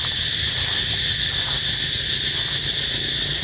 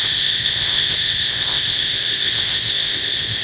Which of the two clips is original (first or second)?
first